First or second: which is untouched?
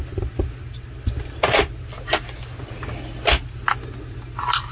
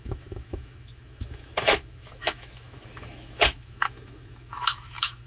first